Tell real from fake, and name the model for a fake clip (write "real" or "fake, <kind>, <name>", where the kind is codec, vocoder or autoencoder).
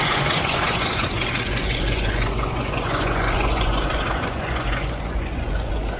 fake, vocoder, Vocos